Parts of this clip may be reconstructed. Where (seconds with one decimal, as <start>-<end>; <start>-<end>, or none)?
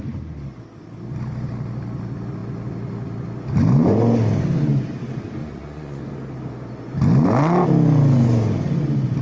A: 5.4-6.0